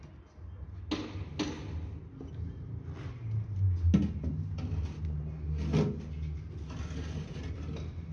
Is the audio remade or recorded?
recorded